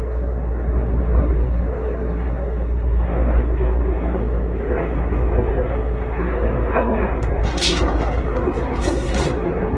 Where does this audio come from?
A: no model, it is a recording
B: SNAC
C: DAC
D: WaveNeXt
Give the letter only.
B